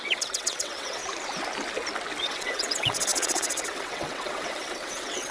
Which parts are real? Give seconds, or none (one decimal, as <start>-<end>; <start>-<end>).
1.0-2.2